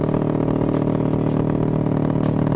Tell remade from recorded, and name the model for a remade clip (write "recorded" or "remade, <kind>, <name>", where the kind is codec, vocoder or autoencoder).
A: recorded